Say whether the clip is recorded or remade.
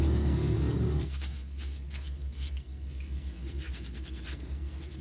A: remade